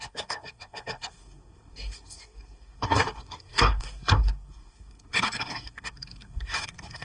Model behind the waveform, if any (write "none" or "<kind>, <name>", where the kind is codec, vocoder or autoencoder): codec, SNAC